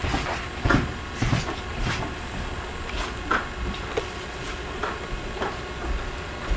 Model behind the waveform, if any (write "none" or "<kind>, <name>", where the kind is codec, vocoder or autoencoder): none